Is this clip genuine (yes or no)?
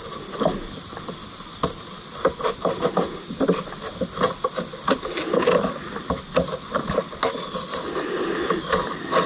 yes